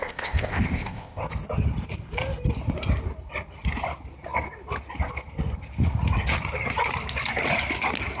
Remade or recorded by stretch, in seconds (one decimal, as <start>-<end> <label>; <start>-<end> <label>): 0.0-1.2 remade; 1.2-8.2 recorded